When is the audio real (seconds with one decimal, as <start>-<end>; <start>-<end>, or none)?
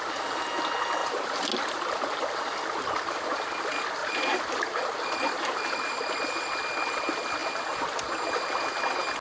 0.0-1.0; 1.5-4.0; 6.5-9.2